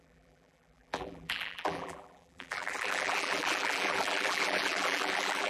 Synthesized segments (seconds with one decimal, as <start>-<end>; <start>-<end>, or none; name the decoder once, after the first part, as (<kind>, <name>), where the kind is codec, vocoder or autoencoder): 0.0-5.5 (vocoder, BigVGAN v2)